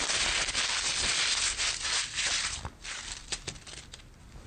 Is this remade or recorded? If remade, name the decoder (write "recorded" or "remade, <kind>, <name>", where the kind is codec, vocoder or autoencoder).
recorded